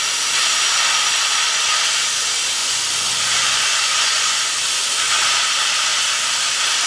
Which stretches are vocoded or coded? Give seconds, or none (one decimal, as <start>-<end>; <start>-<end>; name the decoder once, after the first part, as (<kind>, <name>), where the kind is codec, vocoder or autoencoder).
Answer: 2.6-4.5 (vocoder, Vocos)

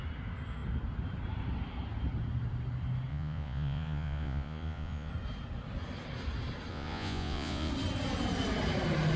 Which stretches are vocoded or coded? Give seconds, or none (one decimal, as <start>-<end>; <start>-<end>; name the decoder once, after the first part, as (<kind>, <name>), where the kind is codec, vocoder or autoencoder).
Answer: 3.1-5.1 (vocoder, Vocos); 6.7-7.7

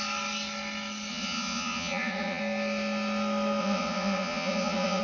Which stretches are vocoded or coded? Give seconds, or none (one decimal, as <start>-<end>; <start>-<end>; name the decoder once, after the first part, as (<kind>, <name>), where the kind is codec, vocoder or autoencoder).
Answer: 1.1-2.4 (vocoder, Vocos); 3.6-5.0

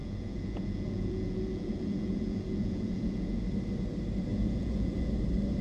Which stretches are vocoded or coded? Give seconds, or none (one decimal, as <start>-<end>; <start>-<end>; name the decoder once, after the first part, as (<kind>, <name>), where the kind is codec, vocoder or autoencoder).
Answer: 0.0-3.4 (vocoder, Vocos); 4.3-5.1

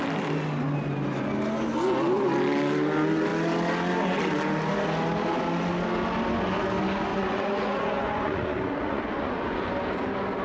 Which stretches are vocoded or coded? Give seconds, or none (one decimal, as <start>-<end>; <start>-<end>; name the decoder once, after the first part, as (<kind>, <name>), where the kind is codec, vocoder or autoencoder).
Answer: 7.1-9.7 (vocoder, Vocos)

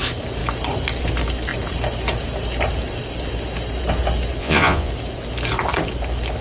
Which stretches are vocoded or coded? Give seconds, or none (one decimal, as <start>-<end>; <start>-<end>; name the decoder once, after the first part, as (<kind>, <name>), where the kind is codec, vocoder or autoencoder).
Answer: 4.4-4.9 (vocoder, Vocos)

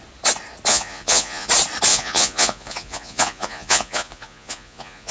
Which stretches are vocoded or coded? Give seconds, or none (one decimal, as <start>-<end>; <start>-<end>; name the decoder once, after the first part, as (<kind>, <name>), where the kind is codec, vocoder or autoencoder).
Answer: 0.7-1.5 (vocoder, Vocos); 1.9-5.1

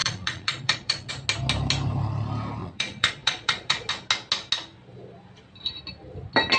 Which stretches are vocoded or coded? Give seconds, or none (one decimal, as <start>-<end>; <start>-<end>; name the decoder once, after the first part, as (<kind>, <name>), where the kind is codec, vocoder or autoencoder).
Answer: 0.0-1.1 (vocoder, Vocos); 2.6-3.9